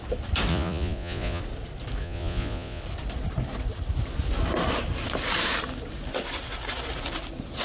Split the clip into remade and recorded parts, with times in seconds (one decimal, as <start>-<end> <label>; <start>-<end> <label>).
0.0-0.5 recorded; 0.5-1.4 remade; 1.4-2.0 recorded; 2.0-2.8 remade; 2.8-7.6 recorded

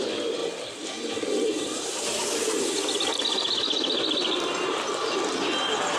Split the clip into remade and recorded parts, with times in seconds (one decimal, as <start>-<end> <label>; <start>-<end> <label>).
0.0-6.0 recorded

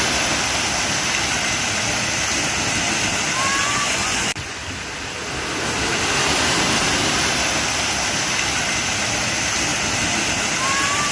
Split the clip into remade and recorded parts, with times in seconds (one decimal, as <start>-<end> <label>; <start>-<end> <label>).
0.0-3.6 recorded; 3.6-4.6 remade; 4.6-11.1 recorded

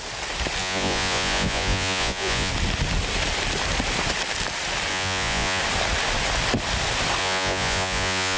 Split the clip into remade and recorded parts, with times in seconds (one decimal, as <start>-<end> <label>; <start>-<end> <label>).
0.0-0.6 recorded; 0.6-2.5 remade; 2.5-4.9 recorded; 4.9-5.6 remade; 5.6-7.2 recorded; 7.2-8.4 remade